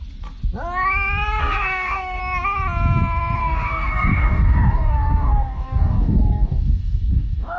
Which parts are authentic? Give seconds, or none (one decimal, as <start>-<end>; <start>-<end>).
0.0-1.4; 2.2-3.4